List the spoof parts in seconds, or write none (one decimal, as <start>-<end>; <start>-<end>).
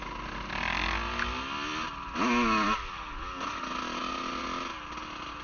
none